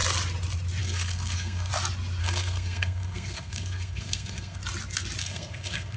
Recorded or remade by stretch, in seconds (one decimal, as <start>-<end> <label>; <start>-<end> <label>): 0.0-0.8 recorded; 0.8-1.7 remade; 1.7-2.2 recorded; 2.2-4.6 remade; 4.6-5.2 recorded; 5.2-6.0 remade